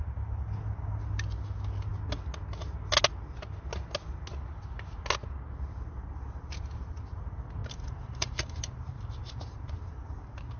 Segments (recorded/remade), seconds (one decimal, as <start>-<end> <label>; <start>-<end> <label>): 0.0-7.6 recorded; 7.6-10.6 remade